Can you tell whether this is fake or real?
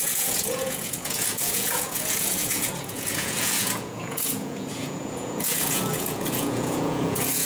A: fake